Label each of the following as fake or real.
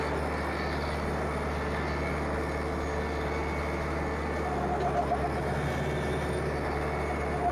real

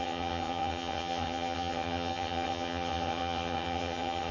fake